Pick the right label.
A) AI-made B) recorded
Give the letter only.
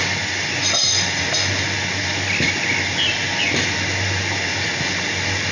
B